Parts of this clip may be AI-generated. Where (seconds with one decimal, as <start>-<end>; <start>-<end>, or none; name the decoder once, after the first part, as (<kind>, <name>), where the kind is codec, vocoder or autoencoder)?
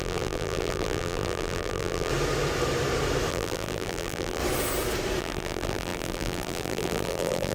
0.0-2.1 (vocoder, BigVGAN v2); 3.3-4.4; 5.2-7.5